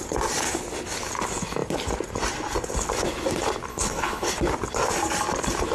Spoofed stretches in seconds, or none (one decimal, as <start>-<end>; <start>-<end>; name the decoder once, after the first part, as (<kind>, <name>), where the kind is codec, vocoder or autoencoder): 3.7-4.3 (codec, HILCodec)